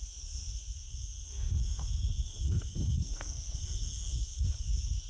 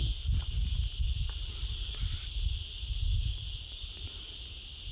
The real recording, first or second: second